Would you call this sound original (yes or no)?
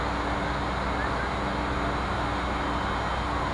yes